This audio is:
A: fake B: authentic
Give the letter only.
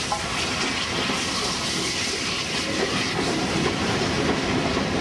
B